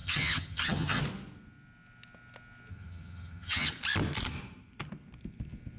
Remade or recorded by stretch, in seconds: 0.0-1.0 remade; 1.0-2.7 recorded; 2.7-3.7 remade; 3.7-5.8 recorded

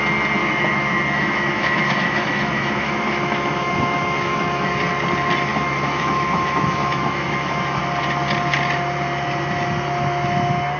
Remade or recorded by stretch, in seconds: 0.0-0.4 recorded; 0.4-4.8 remade; 4.8-5.5 recorded; 5.5-7.8 remade; 7.8-10.8 recorded

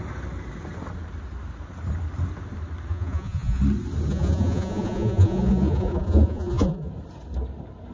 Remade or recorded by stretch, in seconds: 0.0-2.9 recorded; 2.9-3.6 remade; 3.6-4.1 recorded; 4.1-6.9 remade; 6.9-7.9 recorded

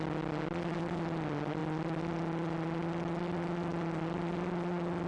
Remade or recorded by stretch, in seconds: 0.0-5.1 recorded